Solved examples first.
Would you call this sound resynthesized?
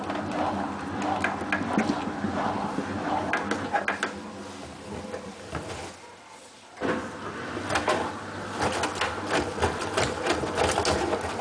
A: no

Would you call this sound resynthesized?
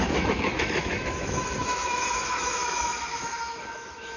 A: yes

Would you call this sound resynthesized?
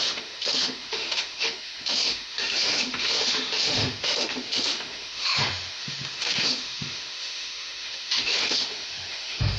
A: yes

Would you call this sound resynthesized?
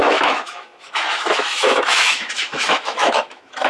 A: yes